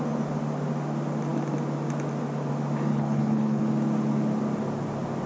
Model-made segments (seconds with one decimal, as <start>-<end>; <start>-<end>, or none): 2.9-3.7